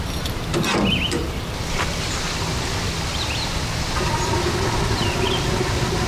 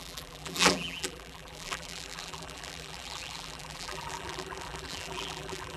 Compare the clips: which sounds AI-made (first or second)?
second